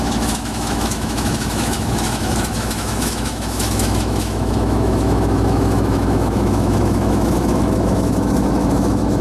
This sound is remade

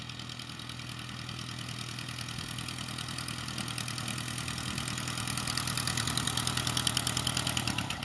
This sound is recorded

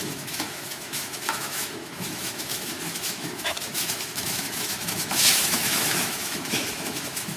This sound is remade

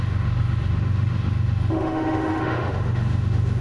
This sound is remade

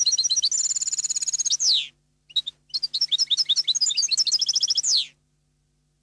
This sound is recorded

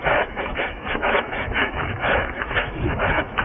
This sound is remade